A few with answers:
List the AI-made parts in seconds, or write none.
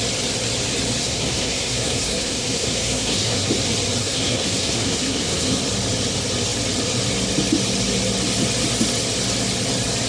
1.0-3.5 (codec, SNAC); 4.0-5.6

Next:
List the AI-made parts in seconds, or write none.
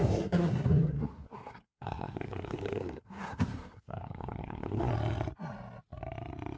0.0-4.9 (codec, SNAC)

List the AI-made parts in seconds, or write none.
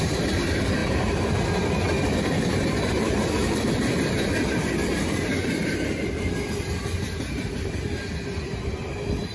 0.8-3.7 (vocoder, BigVGAN v2)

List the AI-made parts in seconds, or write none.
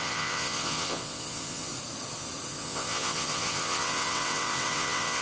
0.0-1.7 (vocoder, WaveNeXt); 2.5-5.2